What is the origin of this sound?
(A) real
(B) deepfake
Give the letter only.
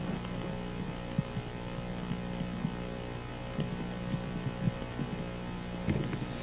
A